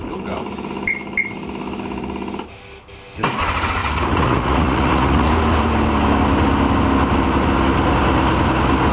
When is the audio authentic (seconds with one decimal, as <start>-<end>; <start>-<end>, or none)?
0.0-3.8; 5.3-8.9